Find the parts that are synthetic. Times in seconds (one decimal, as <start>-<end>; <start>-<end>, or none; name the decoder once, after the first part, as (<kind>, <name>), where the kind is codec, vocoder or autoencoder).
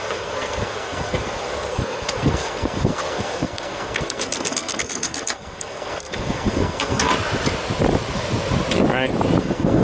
0.0-7.1 (codec, SNAC); 9.4-9.8